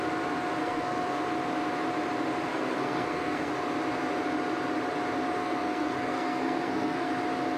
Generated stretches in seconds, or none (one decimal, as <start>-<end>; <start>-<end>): 0.6-1.2; 2.5-3.5; 5.4-7.1